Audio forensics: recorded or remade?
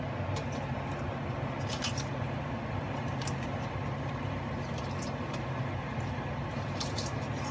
remade